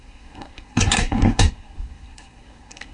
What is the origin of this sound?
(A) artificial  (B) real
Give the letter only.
A